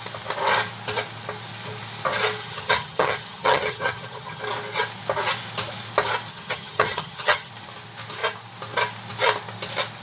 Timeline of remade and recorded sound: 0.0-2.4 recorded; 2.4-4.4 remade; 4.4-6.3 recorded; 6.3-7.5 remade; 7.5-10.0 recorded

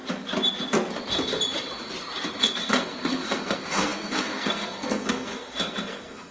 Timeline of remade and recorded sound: 0.0-2.4 recorded; 2.4-6.3 remade

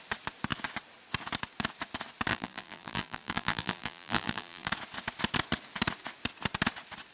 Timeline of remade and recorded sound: 0.0-2.3 recorded; 2.3-4.7 remade; 4.7-7.1 recorded